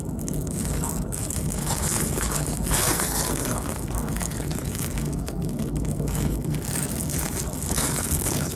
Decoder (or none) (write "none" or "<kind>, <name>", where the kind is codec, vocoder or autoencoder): codec, SNAC